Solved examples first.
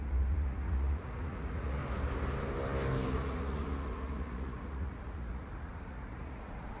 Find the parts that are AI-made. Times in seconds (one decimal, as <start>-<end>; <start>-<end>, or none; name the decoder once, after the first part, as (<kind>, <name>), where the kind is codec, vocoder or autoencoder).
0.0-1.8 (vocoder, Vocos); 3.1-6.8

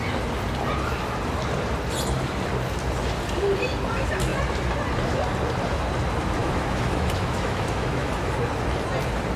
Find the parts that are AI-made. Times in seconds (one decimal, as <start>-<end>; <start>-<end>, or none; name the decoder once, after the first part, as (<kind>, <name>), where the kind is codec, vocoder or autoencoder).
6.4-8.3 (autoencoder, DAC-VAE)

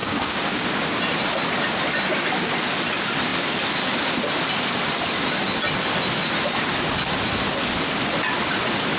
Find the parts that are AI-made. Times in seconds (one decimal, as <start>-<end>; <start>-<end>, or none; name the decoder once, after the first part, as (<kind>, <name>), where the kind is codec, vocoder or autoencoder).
0.0-0.7 (codec, DAC)

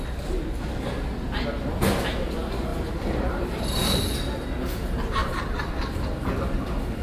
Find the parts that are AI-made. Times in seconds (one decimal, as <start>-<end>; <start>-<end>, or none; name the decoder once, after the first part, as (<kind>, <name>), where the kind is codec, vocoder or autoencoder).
2.7-4.1 (vocoder, BigVGAN v2); 5.2-5.8

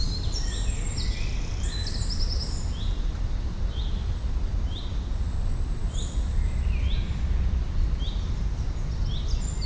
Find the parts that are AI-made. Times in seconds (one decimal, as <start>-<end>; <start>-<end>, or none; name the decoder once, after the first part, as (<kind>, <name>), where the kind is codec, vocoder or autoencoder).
none

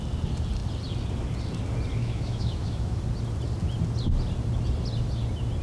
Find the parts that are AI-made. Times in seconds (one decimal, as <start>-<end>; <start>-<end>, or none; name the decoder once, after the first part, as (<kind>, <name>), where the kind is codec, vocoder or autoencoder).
2.0-3.0 (autoencoder, DAC-VAE)

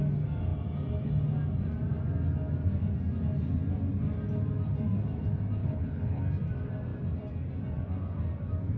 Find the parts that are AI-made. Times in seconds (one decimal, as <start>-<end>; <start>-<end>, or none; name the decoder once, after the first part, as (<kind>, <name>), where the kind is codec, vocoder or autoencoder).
5.6-6.2 (codec, HILCodec)